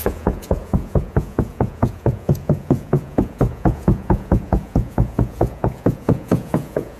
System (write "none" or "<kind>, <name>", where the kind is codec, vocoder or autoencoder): vocoder, Vocos